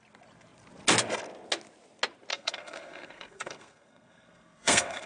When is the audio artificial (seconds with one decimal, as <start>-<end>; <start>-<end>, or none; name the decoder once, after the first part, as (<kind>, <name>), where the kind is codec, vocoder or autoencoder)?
2.3-5.1 (codec, SNAC)